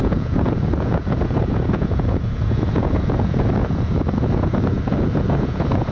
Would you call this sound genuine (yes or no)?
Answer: no